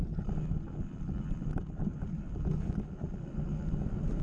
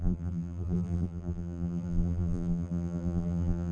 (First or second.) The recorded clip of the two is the first